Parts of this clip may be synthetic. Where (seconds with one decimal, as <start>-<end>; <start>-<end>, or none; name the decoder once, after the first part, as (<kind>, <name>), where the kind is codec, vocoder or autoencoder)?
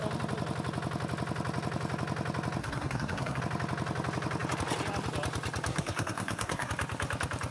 2.6-3.4 (codec, SNAC); 5.7-6.7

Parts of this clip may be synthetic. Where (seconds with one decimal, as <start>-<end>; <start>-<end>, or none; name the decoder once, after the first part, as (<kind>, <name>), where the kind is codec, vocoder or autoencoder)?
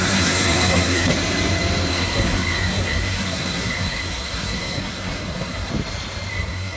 0.0-1.1 (codec, SNAC); 1.9-5.7; 6.3-6.8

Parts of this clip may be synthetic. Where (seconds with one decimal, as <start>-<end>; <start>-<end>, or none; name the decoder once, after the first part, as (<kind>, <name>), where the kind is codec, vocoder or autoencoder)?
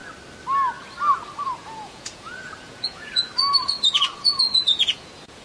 1.6-3.3 (vocoder, Vocos); 4.0-5.4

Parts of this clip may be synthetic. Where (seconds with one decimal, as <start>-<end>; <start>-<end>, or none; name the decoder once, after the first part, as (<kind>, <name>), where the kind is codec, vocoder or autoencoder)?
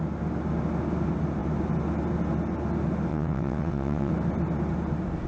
3.1-4.1 (vocoder, WaveNeXt)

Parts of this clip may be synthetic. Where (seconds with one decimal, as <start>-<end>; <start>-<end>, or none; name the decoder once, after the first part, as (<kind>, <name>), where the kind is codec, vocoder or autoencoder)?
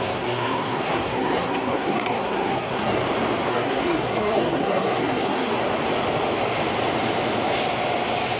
0.0-3.0 (codec, SNAC); 3.5-5.5